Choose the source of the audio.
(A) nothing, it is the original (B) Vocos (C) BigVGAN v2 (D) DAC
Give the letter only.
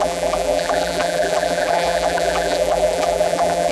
C